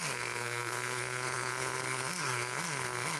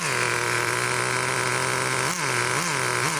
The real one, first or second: second